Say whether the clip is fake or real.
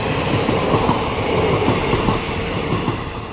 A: real